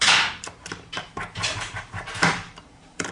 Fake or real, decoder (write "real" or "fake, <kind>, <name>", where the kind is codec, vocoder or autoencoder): fake, vocoder, BigVGAN v2